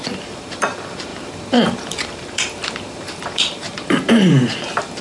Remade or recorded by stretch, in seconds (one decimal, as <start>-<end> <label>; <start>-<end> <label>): 0.0-5.0 remade